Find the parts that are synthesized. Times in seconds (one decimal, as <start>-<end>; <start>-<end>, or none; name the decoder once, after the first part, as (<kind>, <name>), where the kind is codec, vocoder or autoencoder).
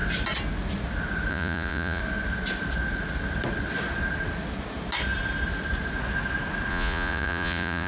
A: 1.3-2.0 (vocoder, Vocos); 6.7-7.9